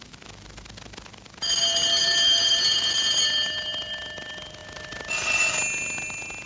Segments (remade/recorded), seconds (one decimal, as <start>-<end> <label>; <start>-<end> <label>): 0.0-6.5 recorded

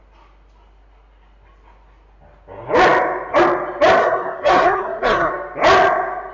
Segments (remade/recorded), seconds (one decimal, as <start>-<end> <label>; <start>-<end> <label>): 0.0-4.0 recorded; 4.0-5.3 remade; 5.3-6.3 recorded

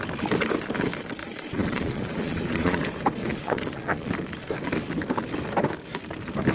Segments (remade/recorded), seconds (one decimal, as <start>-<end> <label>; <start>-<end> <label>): 0.0-1.2 recorded; 1.2-2.8 remade; 2.8-3.2 recorded; 3.2-4.1 remade; 4.1-6.5 recorded